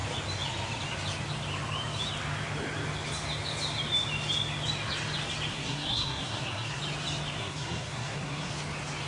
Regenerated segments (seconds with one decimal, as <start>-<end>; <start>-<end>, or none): 5.5-6.8; 7.4-8.5